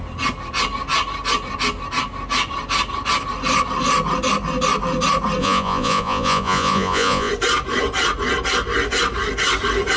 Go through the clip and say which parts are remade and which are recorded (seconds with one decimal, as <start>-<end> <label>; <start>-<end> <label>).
0.0-5.4 recorded; 5.4-7.3 remade; 7.3-10.0 recorded